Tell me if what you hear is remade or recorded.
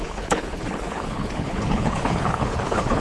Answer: remade